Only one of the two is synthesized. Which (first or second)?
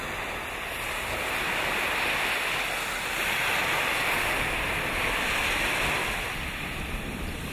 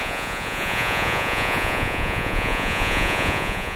second